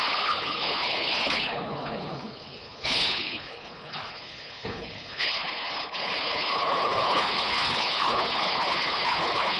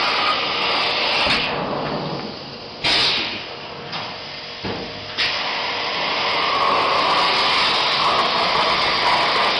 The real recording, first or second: second